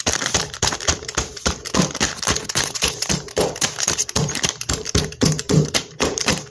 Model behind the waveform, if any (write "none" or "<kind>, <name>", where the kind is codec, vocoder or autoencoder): vocoder, BigVGAN v2